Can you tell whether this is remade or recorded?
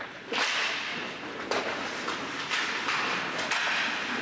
recorded